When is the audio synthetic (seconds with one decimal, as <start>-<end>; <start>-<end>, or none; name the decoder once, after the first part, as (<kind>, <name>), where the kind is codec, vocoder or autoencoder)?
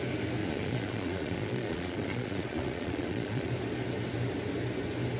0.4-3.5 (vocoder, Vocos)